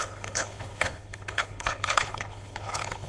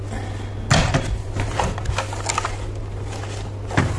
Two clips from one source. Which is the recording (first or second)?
second